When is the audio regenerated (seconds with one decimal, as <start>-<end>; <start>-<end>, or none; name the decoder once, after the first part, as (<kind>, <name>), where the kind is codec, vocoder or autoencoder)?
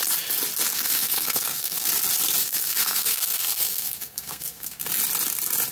0.7-1.9 (codec, SNAC); 2.4-4.9